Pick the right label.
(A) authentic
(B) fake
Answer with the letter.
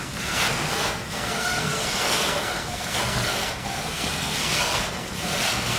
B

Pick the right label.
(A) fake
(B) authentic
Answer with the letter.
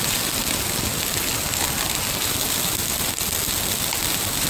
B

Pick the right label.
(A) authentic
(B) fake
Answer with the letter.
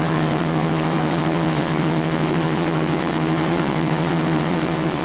B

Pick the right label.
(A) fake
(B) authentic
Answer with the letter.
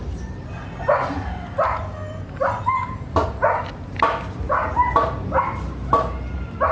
B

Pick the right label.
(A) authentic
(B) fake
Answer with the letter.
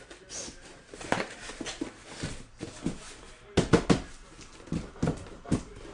A